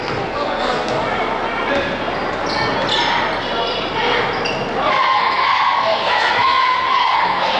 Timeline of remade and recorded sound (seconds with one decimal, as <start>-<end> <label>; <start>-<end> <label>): 0.0-1.0 remade; 1.0-4.9 recorded; 4.9-7.6 remade